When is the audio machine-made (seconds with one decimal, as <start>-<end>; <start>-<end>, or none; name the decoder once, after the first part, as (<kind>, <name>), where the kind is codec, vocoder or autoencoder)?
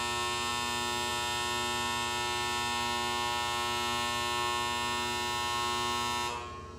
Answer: none